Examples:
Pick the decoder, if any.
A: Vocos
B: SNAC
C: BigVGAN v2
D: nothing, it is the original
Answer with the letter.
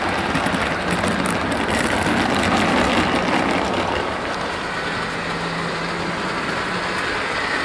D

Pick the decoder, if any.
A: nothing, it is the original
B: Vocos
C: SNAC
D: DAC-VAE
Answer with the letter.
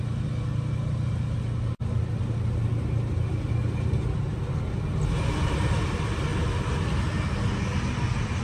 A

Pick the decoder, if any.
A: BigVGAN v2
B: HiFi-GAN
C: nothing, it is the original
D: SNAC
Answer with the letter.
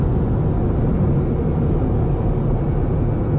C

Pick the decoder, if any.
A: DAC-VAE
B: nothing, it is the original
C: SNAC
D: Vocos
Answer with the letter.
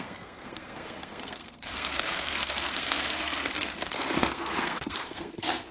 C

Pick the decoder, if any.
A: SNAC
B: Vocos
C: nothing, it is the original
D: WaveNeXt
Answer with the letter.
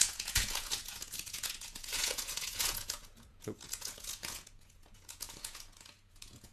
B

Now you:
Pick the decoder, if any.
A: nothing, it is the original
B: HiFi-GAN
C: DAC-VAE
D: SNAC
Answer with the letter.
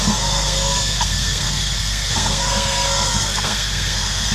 D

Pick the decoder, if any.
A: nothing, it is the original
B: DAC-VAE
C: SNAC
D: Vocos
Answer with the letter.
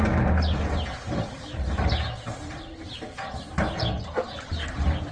A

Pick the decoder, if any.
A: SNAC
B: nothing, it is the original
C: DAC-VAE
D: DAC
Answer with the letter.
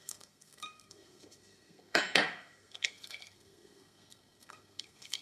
A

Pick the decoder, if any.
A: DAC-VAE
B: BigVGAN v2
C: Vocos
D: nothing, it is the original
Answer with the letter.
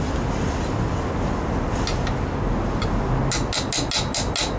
D